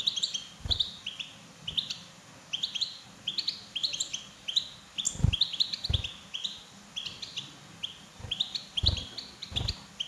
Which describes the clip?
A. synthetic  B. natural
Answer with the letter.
B